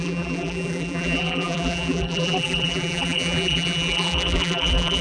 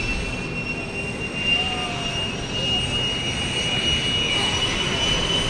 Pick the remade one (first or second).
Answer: first